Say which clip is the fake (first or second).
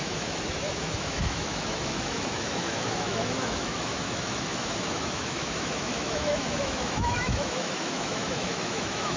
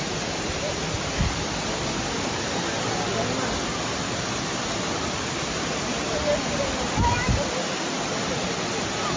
first